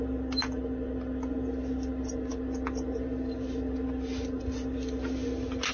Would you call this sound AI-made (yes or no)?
no